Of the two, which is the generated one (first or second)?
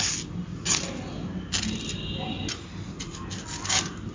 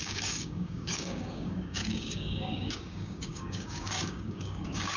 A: second